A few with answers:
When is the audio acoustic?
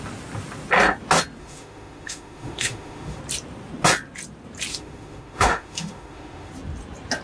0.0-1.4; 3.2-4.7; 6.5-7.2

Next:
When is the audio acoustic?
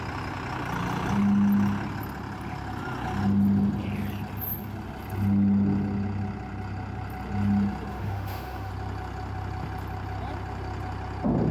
0.0-7.9; 8.7-11.5